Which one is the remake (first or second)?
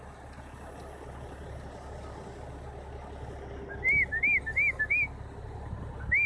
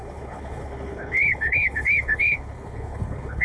second